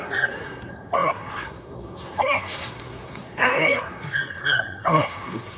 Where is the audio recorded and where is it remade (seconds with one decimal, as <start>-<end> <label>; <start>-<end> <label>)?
0.0-5.6 remade

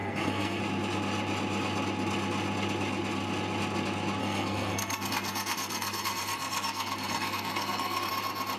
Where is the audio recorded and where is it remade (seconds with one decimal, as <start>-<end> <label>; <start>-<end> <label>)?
0.0-0.6 remade; 0.6-4.2 recorded; 4.2-8.1 remade; 8.1-8.6 recorded